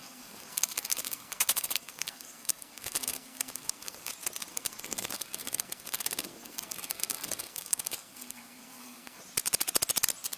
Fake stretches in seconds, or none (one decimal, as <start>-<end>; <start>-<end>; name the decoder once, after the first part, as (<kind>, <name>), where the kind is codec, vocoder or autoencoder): 0.0-4.1 (codec, SNAC); 4.5-9.2

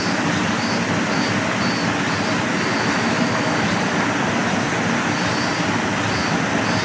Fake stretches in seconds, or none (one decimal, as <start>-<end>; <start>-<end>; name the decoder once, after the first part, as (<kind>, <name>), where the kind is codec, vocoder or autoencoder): none

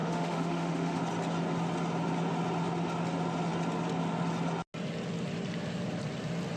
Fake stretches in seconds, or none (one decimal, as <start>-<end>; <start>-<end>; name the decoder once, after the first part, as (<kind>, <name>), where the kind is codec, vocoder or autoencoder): 0.0-1.0 (autoencoder, DAC-VAE)

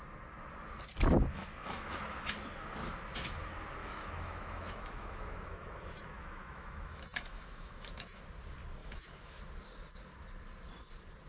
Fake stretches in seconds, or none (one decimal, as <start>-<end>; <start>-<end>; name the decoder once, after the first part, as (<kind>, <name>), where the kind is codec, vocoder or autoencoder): 1.3-2.3 (autoencoder, DAC-VAE); 3.8-8.2; 8.8-9.4

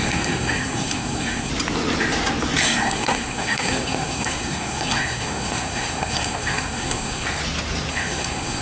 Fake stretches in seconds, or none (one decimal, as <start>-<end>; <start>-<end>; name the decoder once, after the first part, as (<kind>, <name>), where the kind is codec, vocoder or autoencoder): 0.0-1.5 (codec, SNAC); 2.6-7.4; 7.9-8.6

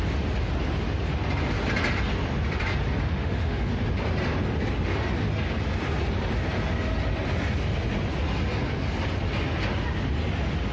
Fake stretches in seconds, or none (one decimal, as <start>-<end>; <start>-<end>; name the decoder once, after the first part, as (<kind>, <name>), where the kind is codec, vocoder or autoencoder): 3.1-3.7 (autoencoder, DAC-VAE)

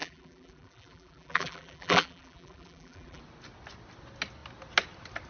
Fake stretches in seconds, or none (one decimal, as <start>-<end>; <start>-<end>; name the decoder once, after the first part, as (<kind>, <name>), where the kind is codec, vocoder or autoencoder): 0.0-3.2 (vocoder, BigVGAN v2)